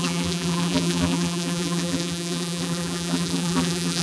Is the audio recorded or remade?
remade